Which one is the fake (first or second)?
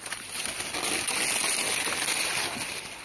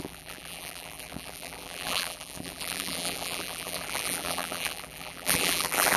second